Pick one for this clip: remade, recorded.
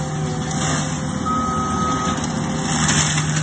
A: recorded